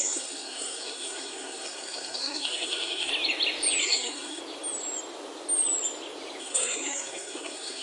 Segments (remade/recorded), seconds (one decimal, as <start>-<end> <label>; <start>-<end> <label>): 0.0-3.1 remade; 3.1-3.8 recorded; 3.8-4.4 remade; 4.4-6.4 recorded; 6.4-7.8 remade